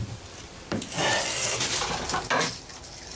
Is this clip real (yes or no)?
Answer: no